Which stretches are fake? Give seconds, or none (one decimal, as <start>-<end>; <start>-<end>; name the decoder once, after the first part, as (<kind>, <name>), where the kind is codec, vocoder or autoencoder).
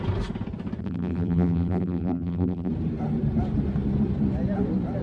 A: 0.8-2.7 (vocoder, BigVGAN v2)